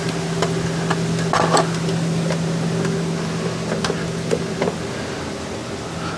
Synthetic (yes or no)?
no